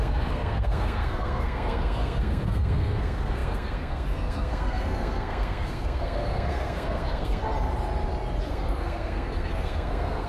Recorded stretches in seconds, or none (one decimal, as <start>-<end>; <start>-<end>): 7.4-8.5

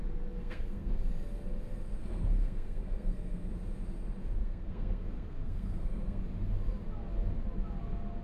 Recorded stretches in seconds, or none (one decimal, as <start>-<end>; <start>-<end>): 0.0-0.4; 1.1-2.0; 3.5-4.4; 6.2-8.2

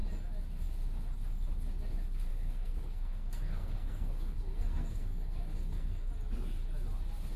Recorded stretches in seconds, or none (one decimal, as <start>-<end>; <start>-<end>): 0.0-2.3; 6.1-7.4

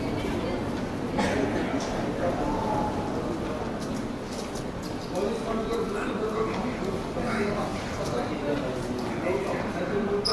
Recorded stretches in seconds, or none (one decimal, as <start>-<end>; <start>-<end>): 0.0-10.3

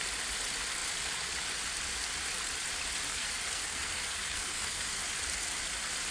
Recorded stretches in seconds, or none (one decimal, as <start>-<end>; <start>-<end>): 0.0-3.1; 5.0-6.1

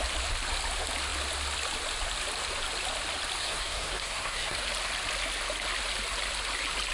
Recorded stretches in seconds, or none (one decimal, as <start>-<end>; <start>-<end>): 0.0-3.4; 4.6-6.9

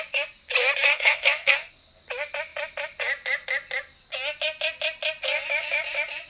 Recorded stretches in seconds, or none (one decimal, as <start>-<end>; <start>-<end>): 0.0-0.9; 1.7-6.3

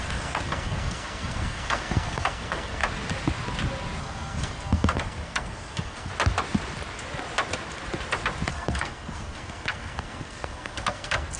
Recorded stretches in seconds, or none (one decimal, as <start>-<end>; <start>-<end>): 2.8-4.0; 6.1-8.5